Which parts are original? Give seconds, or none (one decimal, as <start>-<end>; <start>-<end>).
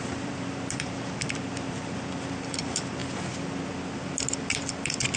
3.0-3.7